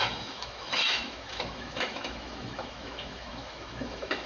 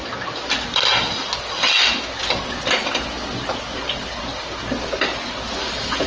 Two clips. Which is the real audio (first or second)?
second